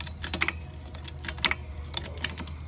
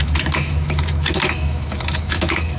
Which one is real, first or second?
first